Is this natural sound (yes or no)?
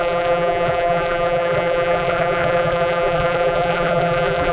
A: no